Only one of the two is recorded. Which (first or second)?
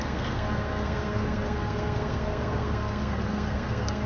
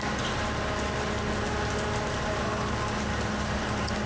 second